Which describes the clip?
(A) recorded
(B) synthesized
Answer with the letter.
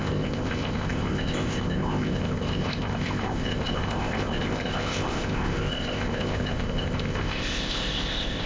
B